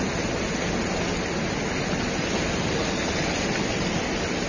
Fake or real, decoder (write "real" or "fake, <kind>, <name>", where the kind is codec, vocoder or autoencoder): real